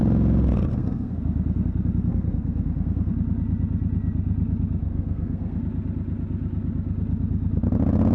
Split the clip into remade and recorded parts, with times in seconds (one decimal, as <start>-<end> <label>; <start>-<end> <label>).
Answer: 0.0-0.7 recorded; 0.7-1.2 remade; 1.2-2.1 recorded; 2.1-3.1 remade; 3.1-4.8 recorded; 4.8-5.6 remade; 5.6-8.1 recorded